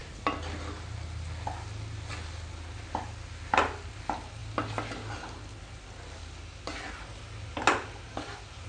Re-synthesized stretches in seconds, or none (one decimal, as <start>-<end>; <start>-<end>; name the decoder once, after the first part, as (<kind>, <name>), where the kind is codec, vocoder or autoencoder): none